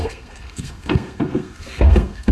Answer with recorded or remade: remade